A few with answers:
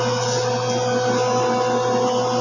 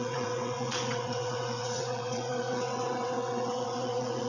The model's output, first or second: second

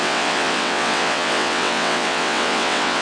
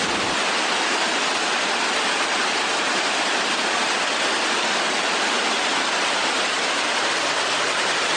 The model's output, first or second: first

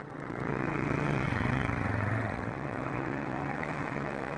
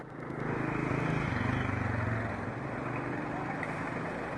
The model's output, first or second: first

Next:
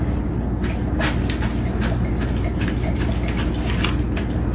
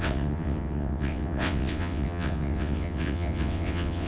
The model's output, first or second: second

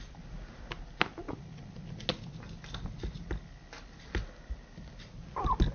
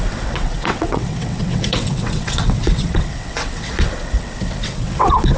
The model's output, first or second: second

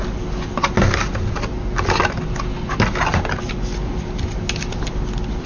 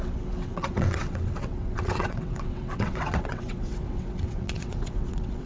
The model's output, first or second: second